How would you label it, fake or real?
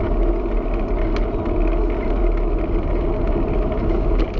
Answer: real